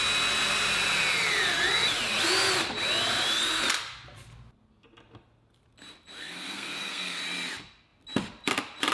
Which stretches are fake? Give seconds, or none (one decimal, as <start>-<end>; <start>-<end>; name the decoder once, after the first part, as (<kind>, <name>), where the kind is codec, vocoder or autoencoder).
6.2-7.2 (codec, SNAC)